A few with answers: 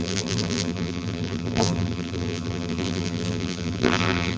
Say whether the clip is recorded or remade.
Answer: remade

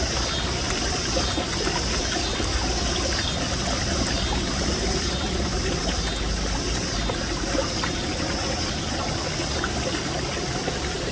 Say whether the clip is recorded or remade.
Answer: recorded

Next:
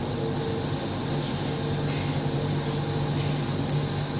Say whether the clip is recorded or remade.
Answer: recorded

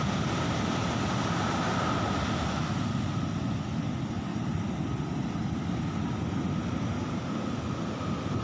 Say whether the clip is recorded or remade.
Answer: recorded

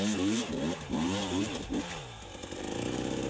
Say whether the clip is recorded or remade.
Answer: remade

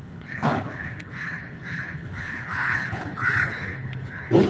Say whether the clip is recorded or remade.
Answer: remade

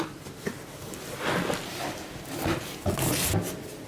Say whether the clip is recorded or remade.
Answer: recorded